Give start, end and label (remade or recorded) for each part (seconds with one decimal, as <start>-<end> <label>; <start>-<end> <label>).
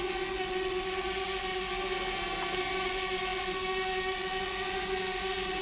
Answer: 0.0-1.7 remade; 1.7-2.7 recorded; 2.7-5.6 remade